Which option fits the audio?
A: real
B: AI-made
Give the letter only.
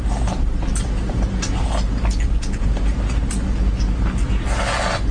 A